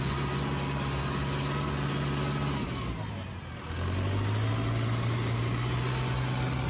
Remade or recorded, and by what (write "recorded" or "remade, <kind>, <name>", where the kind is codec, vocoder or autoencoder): recorded